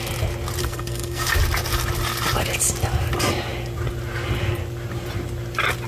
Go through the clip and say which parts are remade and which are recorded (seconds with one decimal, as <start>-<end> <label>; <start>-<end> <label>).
0.0-0.6 recorded; 0.6-1.3 remade; 1.3-5.9 recorded